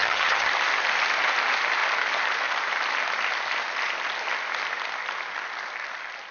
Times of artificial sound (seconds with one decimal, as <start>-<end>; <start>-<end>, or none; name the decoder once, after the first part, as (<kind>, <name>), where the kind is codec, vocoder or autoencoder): 0.0-0.5 (vocoder, HiFi-GAN)